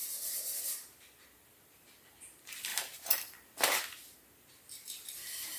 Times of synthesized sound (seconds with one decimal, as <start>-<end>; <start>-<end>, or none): 2.7-3.8